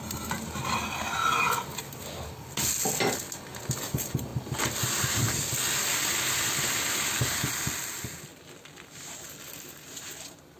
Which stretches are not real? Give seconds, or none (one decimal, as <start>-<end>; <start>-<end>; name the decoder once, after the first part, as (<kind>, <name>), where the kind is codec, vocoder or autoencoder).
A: none